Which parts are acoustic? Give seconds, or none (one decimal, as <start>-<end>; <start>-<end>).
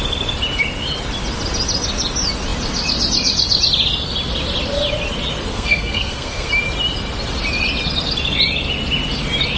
0.0-5.5; 6.5-9.6